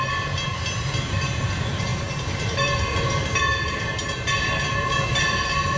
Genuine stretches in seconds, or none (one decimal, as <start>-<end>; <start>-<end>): none